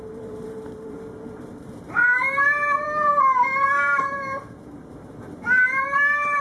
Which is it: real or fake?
fake